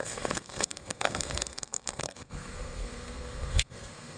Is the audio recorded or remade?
remade